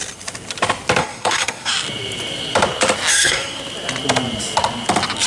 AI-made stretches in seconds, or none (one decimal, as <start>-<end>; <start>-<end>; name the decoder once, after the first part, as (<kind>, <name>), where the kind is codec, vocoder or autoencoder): 1.0-1.7 (codec, SNAC); 3.1-3.6